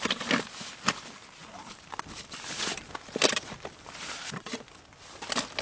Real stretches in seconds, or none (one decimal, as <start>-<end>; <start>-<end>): 0.0-1.4; 4.8-5.6